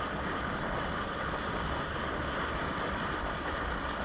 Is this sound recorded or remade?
recorded